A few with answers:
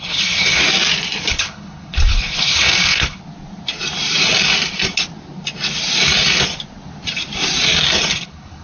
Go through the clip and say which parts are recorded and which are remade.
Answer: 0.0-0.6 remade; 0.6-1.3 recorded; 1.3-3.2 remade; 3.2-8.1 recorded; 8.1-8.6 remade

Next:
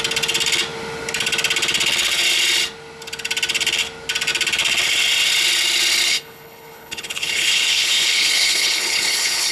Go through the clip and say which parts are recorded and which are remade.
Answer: 0.0-6.1 recorded; 6.1-9.5 remade

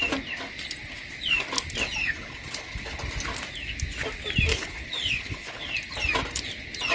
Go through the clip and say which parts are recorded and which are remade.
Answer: 0.0-2.0 recorded; 2.0-3.0 remade; 3.0-4.5 recorded; 4.5-5.7 remade; 5.7-6.9 recorded